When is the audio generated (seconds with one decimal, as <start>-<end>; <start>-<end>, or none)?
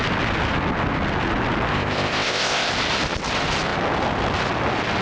1.7-2.7